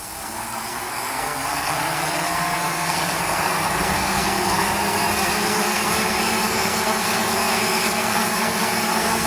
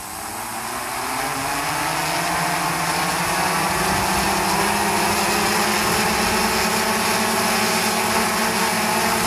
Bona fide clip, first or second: second